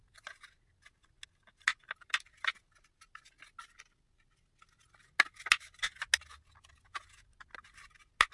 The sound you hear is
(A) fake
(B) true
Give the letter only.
B